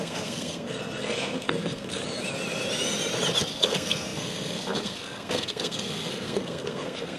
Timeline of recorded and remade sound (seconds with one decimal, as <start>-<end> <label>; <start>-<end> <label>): 0.0-2.0 remade; 2.0-3.5 recorded; 3.5-7.2 remade